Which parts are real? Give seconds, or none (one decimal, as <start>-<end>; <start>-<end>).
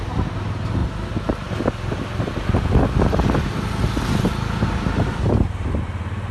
0.0-6.3